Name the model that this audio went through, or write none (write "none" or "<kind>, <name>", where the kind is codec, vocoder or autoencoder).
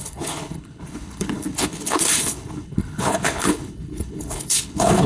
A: codec, HILCodec